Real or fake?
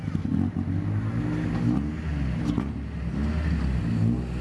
real